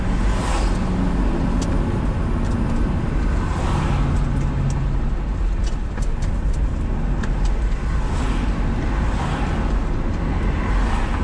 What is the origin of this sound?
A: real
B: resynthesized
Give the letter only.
A